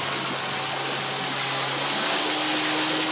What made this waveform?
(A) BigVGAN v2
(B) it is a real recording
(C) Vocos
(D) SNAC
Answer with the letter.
B